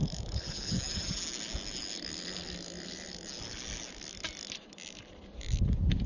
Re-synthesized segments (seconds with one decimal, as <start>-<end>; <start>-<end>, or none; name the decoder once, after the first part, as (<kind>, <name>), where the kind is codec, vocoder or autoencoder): 0.0-0.8 (codec, HILCodec)

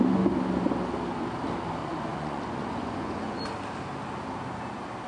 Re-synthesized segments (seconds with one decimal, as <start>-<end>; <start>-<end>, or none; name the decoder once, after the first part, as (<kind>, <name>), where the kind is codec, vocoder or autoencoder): 1.8-3.4 (vocoder, Vocos)

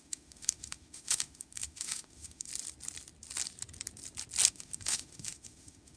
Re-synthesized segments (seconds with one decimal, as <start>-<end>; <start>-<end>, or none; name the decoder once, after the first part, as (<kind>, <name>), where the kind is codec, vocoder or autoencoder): 0.0-2.5 (autoencoder, DAC-VAE); 4.5-6.0

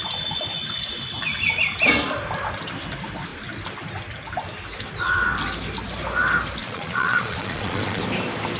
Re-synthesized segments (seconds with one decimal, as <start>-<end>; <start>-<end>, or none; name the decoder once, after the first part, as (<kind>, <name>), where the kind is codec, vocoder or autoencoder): 6.6-8.0 (vocoder, Vocos)

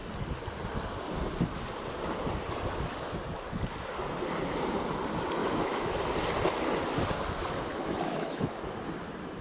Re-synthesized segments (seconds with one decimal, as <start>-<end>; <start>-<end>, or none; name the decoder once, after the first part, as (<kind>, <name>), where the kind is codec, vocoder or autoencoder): 5.4-6.0 (autoencoder, DAC-VAE); 7.7-8.8